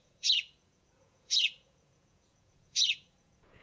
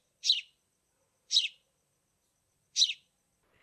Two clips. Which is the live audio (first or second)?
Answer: second